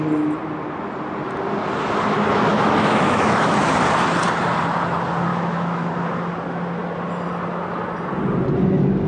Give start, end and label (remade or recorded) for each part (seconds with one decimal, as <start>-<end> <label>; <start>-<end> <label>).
0.0-2.5 recorded; 2.5-3.5 remade; 3.5-5.3 recorded; 5.3-5.9 remade; 5.9-9.1 recorded